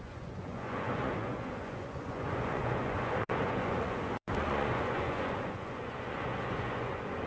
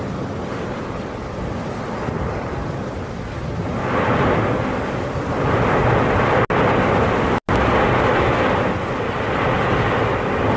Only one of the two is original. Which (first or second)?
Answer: second